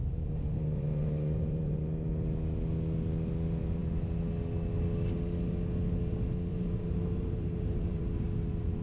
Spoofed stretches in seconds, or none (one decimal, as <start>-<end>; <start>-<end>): 0.0-2.1; 6.5-8.0